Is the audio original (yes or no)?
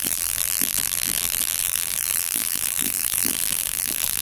no